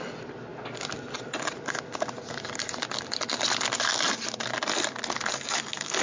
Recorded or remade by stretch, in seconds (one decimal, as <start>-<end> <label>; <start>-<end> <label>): 0.0-6.0 recorded